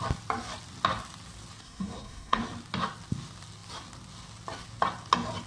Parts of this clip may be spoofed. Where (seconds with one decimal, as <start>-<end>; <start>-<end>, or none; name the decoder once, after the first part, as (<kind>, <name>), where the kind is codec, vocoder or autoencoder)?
1.6-2.4 (codec, SNAC)